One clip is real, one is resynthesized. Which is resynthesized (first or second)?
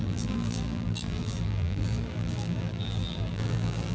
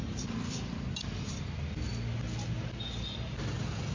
first